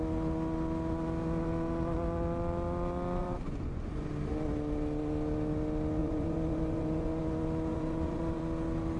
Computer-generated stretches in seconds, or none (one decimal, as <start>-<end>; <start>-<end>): 3.2-4.1; 6.0-7.2; 7.7-8.4